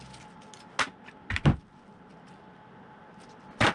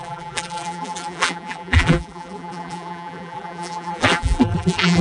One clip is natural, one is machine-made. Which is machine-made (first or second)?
second